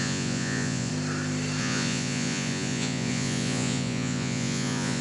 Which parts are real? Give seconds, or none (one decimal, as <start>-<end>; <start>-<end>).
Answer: 0.9-1.6